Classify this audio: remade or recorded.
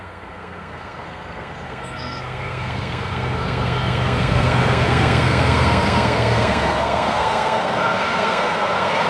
remade